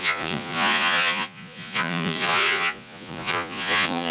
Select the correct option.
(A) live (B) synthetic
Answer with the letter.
B